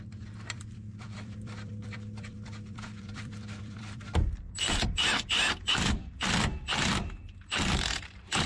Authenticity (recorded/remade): remade